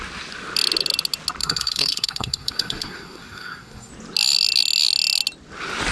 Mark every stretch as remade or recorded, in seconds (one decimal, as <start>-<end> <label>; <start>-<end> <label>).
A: 0.0-1.4 recorded; 1.4-3.9 remade; 3.9-5.9 recorded